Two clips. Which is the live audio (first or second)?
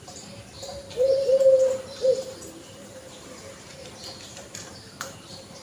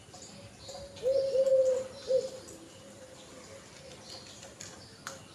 second